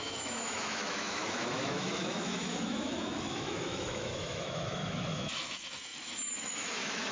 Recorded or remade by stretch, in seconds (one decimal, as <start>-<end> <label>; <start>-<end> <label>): 0.0-7.1 remade